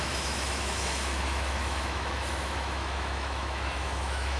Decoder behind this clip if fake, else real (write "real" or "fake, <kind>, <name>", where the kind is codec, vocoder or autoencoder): fake, autoencoder, DAC-VAE